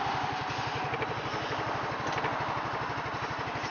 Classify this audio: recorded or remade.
recorded